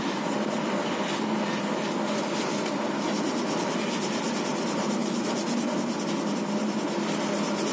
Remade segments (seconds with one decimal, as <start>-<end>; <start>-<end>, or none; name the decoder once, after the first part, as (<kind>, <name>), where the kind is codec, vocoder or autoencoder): none